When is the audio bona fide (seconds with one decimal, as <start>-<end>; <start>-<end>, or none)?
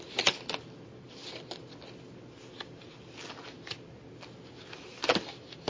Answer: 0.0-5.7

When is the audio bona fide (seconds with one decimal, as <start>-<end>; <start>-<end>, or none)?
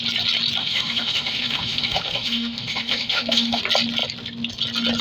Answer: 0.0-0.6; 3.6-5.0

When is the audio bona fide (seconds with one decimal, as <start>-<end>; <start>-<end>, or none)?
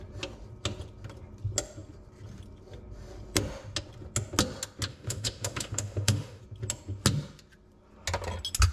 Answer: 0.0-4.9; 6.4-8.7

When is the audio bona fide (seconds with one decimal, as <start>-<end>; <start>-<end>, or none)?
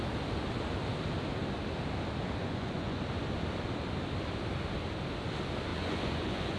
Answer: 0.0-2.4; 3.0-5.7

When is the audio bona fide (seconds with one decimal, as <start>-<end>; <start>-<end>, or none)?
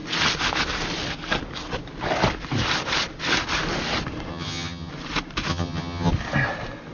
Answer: 0.0-4.3; 4.9-5.5; 6.1-6.9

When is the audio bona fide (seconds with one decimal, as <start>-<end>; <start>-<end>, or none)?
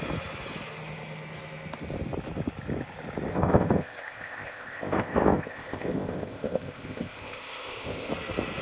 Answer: 0.0-3.3; 8.1-8.6